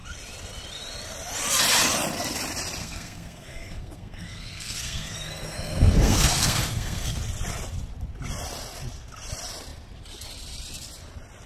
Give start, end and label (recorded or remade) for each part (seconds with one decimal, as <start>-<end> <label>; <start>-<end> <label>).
0.0-2.8 recorded; 2.8-7.2 remade; 7.2-11.5 recorded